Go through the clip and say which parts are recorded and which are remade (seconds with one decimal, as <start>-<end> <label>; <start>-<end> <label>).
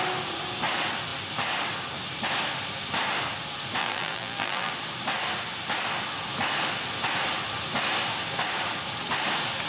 0.0-3.8 recorded; 3.8-4.7 remade; 4.7-9.7 recorded